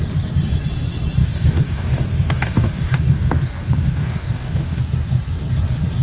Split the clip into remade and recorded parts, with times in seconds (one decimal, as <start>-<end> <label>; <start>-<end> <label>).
0.0-1.2 recorded; 1.2-4.8 remade; 4.8-6.0 recorded